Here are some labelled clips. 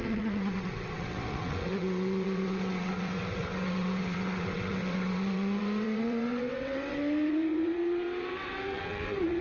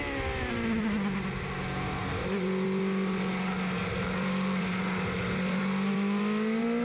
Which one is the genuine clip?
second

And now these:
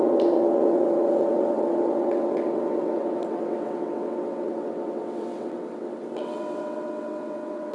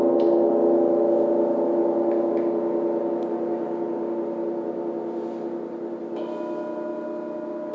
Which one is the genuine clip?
second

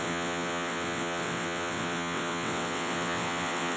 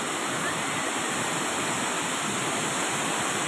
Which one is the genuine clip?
second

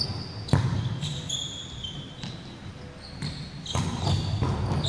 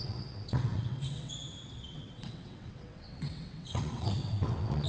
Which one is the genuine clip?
first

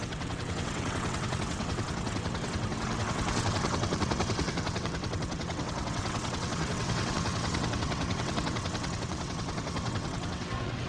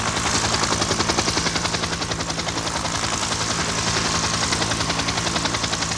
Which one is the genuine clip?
second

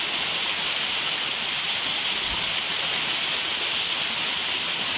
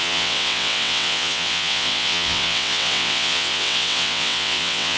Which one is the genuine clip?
first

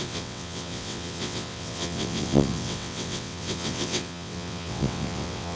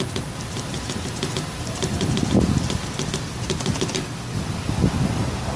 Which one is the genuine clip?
second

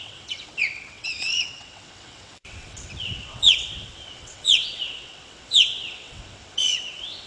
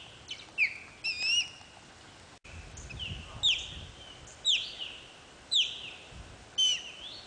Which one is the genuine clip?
second